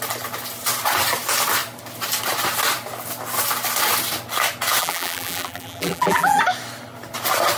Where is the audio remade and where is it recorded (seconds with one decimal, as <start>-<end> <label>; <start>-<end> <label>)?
0.0-4.8 recorded; 4.8-6.4 remade; 6.4-7.6 recorded